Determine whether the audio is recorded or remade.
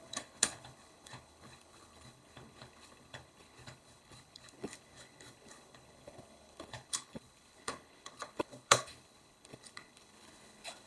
remade